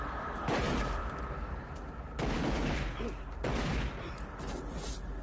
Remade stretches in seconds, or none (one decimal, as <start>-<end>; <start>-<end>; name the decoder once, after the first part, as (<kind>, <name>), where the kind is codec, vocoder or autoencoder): none